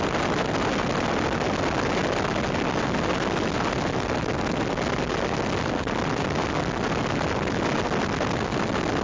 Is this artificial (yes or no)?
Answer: no